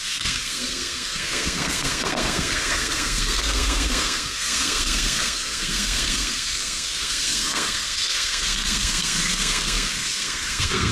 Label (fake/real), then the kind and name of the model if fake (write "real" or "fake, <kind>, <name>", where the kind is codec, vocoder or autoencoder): fake, codec, SNAC